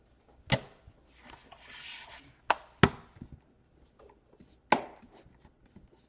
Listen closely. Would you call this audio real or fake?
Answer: real